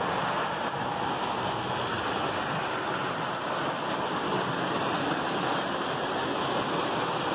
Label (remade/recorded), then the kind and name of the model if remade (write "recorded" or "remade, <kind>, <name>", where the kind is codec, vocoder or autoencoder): recorded